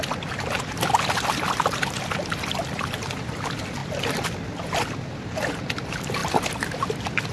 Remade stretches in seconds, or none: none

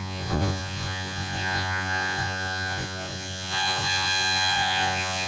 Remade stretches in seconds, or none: 0.0-5.3 (vocoder, Vocos)